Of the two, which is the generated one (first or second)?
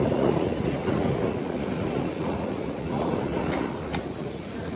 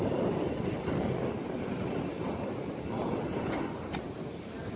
first